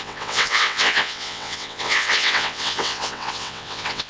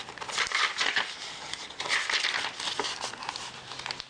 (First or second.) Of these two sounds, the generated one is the first